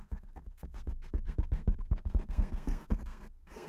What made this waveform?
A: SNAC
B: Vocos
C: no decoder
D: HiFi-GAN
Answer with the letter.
A